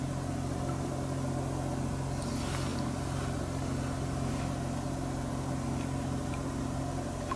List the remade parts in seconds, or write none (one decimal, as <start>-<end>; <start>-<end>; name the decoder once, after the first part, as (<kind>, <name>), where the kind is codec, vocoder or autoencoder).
none